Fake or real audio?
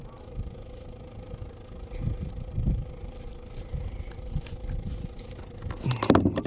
real